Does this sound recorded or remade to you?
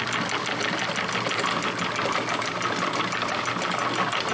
recorded